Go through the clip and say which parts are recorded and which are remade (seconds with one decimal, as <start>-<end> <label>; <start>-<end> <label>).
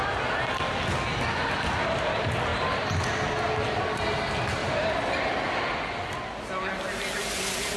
0.0-7.8 recorded